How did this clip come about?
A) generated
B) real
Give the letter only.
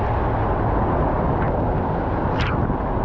B